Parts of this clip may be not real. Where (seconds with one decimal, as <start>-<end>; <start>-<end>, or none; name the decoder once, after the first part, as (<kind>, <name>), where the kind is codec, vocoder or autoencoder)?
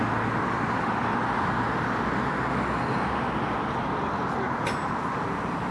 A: none